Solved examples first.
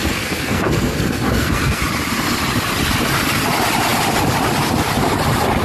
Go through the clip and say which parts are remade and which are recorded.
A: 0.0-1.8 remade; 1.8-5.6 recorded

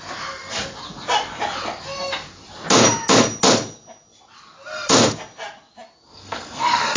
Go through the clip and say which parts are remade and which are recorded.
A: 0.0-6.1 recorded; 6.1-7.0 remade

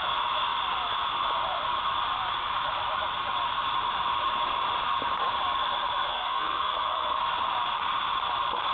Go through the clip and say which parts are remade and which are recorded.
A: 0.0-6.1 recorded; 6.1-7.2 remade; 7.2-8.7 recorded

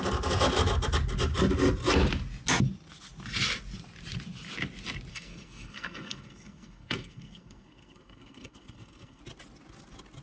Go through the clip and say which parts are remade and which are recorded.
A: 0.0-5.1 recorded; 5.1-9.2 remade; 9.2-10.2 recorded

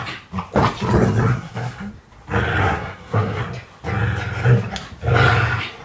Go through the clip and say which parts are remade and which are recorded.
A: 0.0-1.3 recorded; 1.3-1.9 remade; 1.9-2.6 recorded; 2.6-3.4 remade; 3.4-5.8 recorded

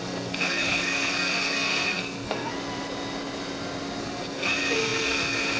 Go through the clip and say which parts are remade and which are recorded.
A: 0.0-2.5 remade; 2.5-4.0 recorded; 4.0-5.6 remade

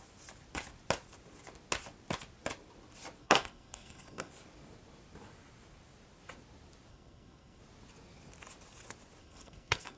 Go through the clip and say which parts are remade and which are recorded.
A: 0.0-3.2 recorded; 3.2-4.3 remade; 4.3-6.9 recorded; 6.9-7.6 remade; 7.6-9.2 recorded; 9.2-10.0 remade

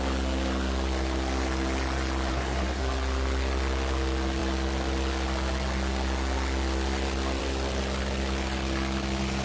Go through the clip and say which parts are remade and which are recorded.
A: 0.0-2.3 recorded; 2.3-2.8 remade; 2.8-9.4 recorded